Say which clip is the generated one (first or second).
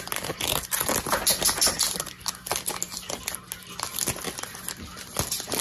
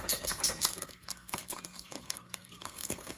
second